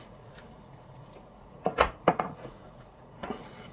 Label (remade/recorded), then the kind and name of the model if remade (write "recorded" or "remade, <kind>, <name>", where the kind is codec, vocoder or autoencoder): remade, vocoder, Vocos